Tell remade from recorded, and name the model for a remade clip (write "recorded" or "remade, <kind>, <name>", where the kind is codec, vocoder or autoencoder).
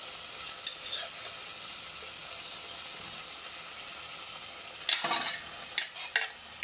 recorded